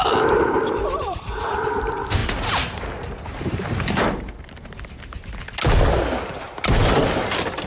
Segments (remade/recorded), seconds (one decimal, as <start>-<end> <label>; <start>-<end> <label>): 0.0-5.4 remade; 5.4-6.2 recorded; 6.2-6.8 remade; 6.8-7.7 recorded